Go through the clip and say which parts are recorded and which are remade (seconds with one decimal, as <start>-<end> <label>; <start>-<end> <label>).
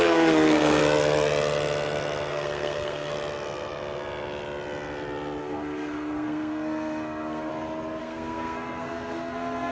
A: 0.0-0.8 remade; 0.8-2.3 recorded; 2.3-3.1 remade; 3.1-5.4 recorded; 5.4-7.5 remade; 7.5-8.0 recorded; 8.0-9.7 remade